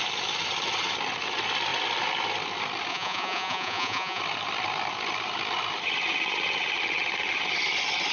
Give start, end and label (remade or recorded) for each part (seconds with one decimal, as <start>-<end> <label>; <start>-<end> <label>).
0.0-2.9 recorded; 2.9-4.2 remade; 4.2-8.1 recorded